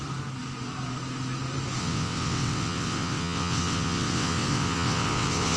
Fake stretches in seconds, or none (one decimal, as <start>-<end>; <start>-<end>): 1.8-5.6